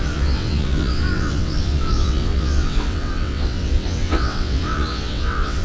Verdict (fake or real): fake